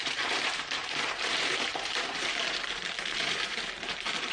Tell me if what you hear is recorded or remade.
remade